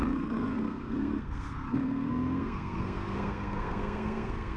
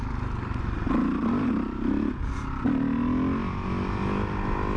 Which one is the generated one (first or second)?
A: first